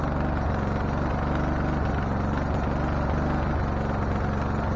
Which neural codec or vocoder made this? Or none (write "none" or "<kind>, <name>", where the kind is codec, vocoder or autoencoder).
none